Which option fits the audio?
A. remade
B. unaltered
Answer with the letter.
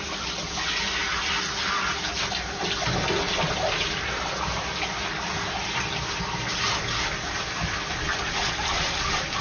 B